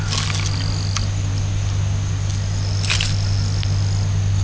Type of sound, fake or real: real